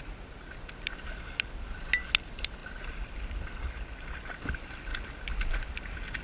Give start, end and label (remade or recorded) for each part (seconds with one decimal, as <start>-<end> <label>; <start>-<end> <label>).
0.0-6.2 recorded